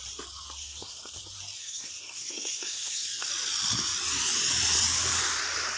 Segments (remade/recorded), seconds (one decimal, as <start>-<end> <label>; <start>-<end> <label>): 0.0-0.6 recorded; 0.6-1.2 remade; 1.2-1.6 recorded; 1.6-3.3 remade; 3.3-5.8 recorded